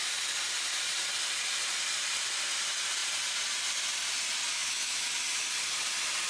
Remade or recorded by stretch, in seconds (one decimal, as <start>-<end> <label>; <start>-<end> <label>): 0.0-4.5 recorded; 4.5-5.1 remade; 5.1-6.3 recorded

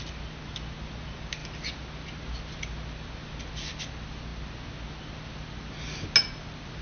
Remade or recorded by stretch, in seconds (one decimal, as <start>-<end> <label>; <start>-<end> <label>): 0.0-6.8 recorded